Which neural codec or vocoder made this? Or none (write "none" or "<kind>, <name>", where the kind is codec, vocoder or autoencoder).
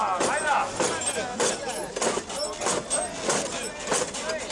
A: none